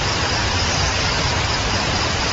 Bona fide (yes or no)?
no